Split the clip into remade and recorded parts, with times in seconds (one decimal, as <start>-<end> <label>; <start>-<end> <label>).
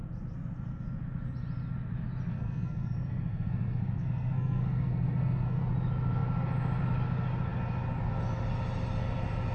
0.0-2.3 recorded; 2.3-5.6 remade; 5.6-9.5 recorded